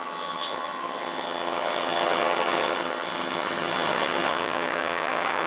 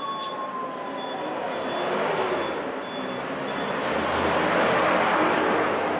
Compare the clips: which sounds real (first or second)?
second